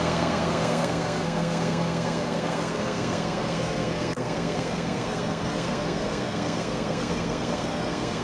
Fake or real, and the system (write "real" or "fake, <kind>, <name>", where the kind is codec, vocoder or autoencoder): fake, codec, SNAC